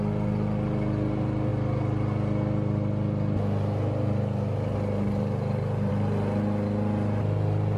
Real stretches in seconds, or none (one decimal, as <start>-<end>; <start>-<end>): 0.0-7.8